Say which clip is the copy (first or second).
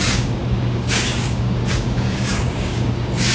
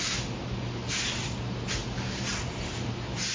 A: first